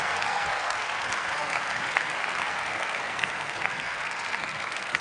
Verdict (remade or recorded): remade